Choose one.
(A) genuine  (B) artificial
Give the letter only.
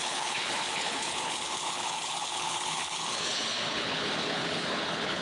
B